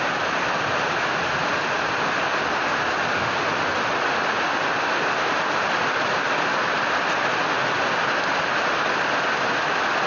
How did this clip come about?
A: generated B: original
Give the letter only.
B